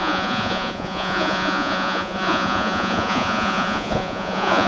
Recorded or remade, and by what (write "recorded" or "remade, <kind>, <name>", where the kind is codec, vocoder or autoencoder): remade, vocoder, Vocos